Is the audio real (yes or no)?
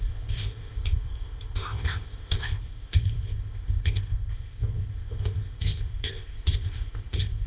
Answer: no